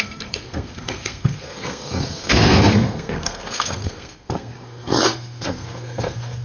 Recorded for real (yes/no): no